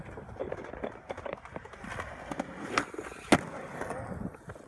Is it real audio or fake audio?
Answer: real